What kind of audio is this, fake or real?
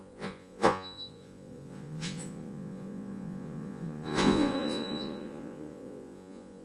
fake